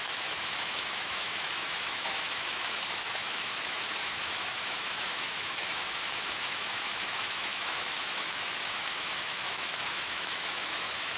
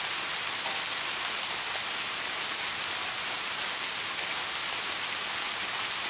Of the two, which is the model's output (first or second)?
first